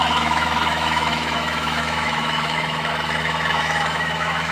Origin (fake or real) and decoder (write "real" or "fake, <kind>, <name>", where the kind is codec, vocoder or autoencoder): fake, autoencoder, DAC-VAE